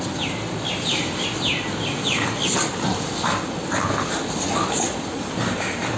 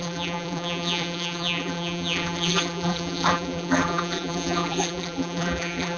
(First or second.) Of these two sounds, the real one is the first